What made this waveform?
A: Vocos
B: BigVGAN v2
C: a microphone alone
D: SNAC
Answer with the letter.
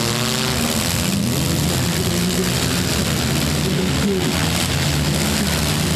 C